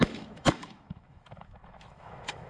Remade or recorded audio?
remade